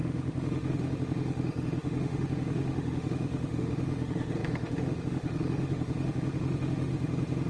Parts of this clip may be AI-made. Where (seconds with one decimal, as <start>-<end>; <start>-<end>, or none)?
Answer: 0.0-6.9